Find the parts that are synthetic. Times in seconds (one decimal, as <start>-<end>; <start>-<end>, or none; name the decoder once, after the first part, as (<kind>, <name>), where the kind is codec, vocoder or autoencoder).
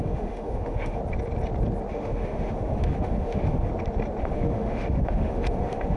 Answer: 0.0-1.0 (autoencoder, DAC-VAE); 1.9-3.7; 4.2-6.0